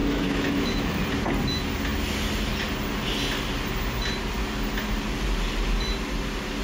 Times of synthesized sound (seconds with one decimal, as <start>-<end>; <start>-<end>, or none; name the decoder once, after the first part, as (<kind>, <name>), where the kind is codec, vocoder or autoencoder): 0.0-1.0 (autoencoder, DAC-VAE)